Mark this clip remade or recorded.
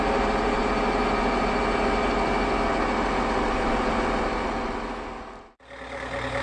recorded